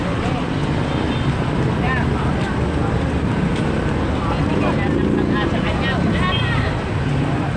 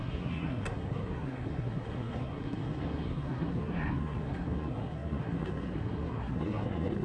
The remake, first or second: second